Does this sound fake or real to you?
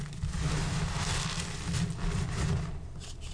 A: real